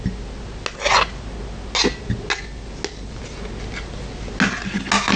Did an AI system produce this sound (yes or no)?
no